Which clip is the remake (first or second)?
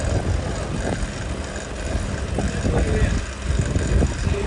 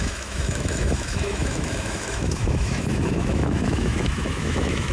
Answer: second